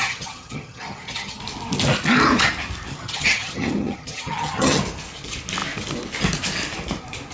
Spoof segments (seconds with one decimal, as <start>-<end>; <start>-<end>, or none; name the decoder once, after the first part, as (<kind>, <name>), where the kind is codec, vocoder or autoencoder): 0.0-1.4 (vocoder, HiFi-GAN); 2.9-4.8

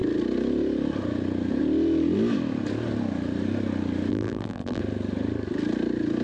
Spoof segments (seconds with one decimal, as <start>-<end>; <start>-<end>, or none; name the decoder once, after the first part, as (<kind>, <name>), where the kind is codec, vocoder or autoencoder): 4.1-4.8 (vocoder, BigVGAN v2)

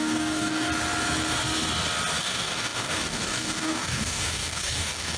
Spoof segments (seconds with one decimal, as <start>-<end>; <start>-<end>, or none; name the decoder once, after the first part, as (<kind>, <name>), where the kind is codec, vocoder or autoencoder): 0.0-0.7 (codec, DAC); 2.2-5.2

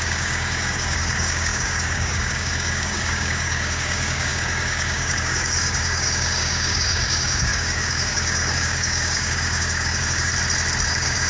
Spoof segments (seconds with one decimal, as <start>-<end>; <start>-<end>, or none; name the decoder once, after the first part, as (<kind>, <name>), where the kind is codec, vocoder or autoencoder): 0.0-10.3 (codec, DAC); 10.9-11.3

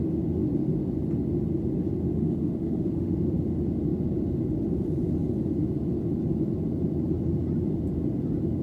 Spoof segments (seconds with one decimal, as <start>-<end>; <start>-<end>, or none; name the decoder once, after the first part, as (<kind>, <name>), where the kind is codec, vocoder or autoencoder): 2.1-3.2 (autoencoder, DAC-VAE)

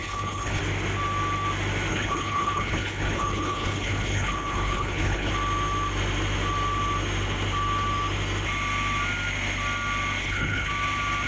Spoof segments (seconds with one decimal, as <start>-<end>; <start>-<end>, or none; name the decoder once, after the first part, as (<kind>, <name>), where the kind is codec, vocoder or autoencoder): 0.0-0.6 (codec, HILCodec); 1.9-5.3; 10.2-10.7

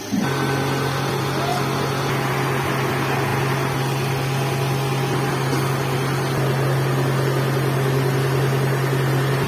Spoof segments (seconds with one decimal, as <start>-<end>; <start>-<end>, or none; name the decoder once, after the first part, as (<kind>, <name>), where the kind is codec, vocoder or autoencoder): none